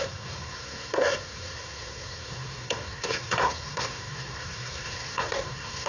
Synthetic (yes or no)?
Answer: yes